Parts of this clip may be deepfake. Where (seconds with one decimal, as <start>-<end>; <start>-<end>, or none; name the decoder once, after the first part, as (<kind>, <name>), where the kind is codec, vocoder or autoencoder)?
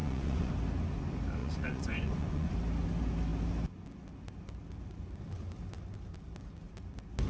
0.0-0.5 (vocoder, Vocos); 1.4-2.5